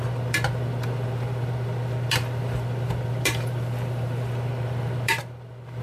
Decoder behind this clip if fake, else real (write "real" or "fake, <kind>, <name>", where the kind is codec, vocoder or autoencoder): fake, vocoder, BigVGAN v2